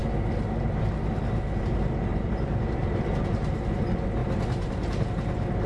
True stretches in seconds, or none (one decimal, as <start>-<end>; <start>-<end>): 0.0-2.1; 3.8-4.2; 5.1-5.7